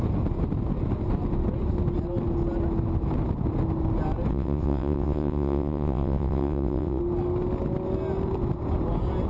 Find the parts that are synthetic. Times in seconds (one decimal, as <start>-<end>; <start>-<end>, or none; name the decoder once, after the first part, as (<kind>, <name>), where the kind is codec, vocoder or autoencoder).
4.3-7.0 (vocoder, WaveNeXt)